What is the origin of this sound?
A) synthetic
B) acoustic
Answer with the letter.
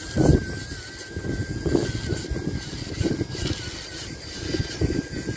B